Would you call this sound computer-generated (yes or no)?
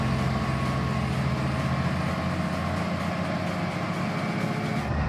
no